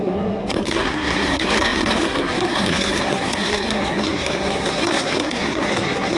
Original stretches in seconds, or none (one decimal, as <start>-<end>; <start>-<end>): none